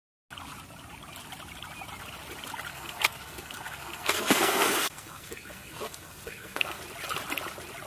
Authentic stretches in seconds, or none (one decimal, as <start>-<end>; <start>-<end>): 0.0-2.7; 6.8-7.9